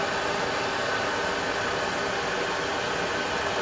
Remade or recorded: recorded